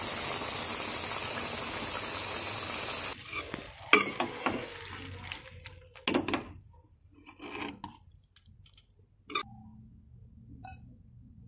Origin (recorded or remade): recorded